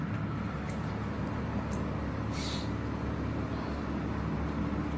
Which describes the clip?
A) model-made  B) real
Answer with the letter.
B